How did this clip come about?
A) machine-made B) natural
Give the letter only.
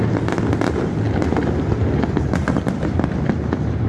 B